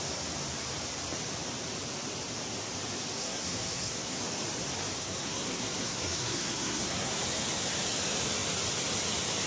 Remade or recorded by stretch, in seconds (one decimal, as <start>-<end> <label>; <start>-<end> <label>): 0.0-3.2 recorded; 3.2-4.2 remade; 4.2-5.0 recorded; 5.0-7.2 remade; 7.2-9.5 recorded